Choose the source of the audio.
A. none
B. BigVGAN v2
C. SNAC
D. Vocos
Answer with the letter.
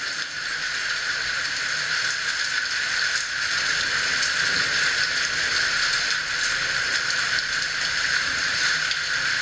A